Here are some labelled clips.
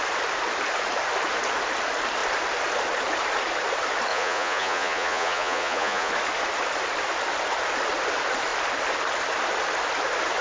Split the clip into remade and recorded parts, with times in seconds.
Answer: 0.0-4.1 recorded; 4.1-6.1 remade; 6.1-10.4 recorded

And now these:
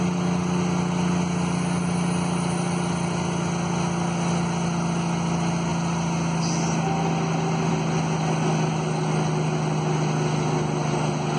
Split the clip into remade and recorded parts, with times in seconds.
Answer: 0.0-11.4 recorded

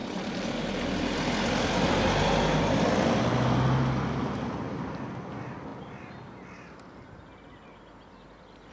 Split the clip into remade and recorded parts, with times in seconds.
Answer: 0.0-8.7 recorded